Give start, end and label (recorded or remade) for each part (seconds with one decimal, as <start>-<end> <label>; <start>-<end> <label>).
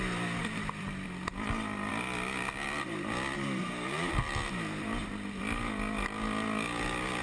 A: 0.0-7.2 recorded